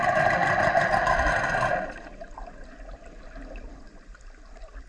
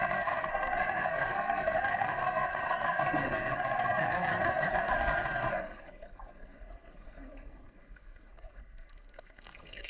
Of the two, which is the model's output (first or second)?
second